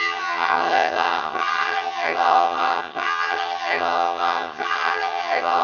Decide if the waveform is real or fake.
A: fake